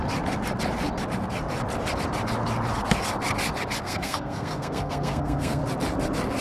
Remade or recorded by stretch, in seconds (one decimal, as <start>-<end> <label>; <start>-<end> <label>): 0.0-3.8 recorded; 3.8-5.6 remade; 5.6-6.4 recorded